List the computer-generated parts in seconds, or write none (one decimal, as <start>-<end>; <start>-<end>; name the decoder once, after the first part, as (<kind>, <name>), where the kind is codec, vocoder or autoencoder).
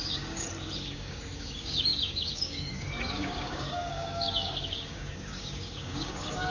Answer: 0.0-6.5 (codec, DAC)